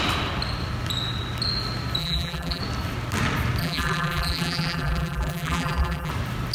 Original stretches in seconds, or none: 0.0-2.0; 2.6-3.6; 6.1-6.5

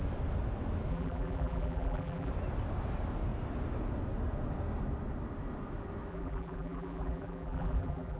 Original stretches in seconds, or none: 0.0-0.9; 2.3-6.1

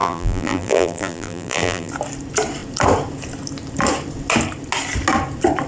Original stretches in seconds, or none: 1.9-5.7

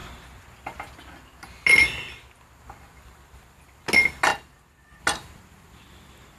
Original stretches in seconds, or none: 0.0-6.4

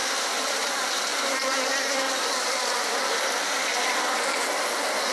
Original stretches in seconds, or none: 0.7-1.1; 4.2-5.1

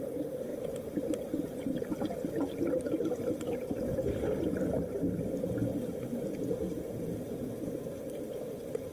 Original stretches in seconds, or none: 0.0-8.9

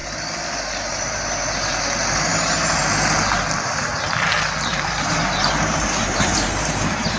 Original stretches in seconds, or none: 0.0-4.7